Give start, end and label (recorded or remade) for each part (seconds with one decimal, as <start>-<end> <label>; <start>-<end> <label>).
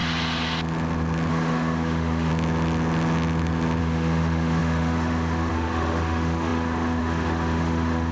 0.0-1.3 recorded; 1.3-2.3 remade; 2.3-3.8 recorded; 3.8-8.1 remade